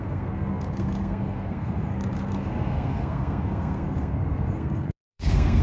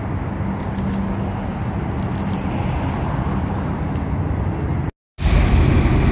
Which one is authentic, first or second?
second